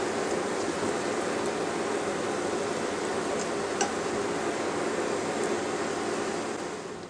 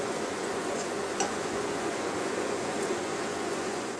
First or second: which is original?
first